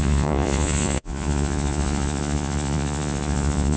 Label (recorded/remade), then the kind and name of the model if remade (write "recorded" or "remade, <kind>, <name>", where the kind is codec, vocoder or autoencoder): remade, vocoder, Vocos